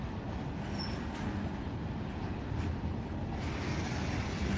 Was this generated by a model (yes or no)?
no